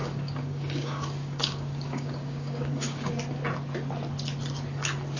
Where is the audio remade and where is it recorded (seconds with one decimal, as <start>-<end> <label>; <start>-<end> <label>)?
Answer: 0.0-3.1 remade; 3.1-5.2 recorded